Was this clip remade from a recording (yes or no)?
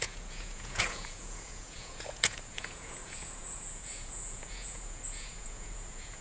yes